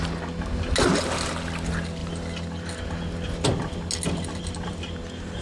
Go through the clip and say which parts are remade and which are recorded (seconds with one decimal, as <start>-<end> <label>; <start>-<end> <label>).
0.0-5.4 recorded